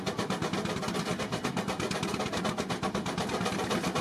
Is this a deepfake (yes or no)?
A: no